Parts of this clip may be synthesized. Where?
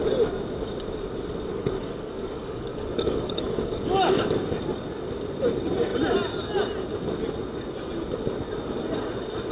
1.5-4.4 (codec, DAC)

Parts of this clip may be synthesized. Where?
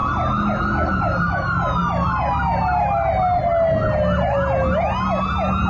none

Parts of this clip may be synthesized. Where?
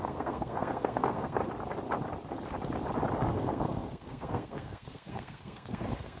0.0-1.4 (codec, SNAC); 3.3-6.2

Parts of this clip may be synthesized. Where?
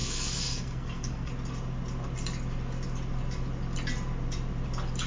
0.0-1.3 (codec, SNAC)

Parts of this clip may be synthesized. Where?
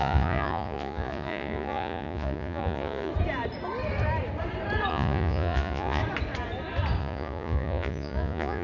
0.0-3.1 (vocoder, Vocos); 4.9-6.0; 7.0-8.6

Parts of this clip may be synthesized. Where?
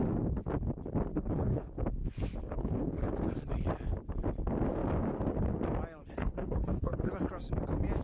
1.1-1.8 (codec, HILCodec); 2.4-3.1; 6.0-7.1